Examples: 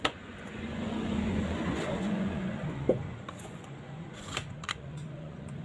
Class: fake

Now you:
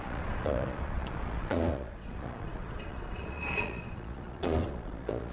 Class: fake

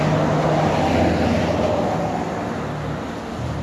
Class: real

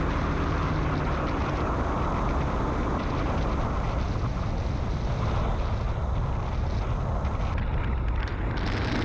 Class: real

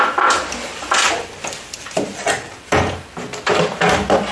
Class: fake